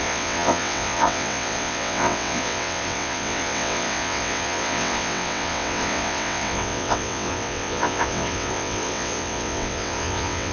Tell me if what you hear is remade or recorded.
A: remade